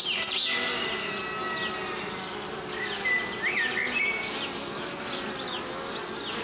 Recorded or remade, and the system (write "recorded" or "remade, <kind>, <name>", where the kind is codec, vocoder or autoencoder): recorded